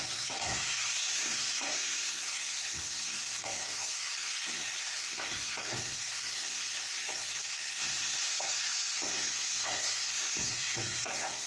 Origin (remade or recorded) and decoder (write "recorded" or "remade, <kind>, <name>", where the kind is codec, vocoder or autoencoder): remade, codec, SNAC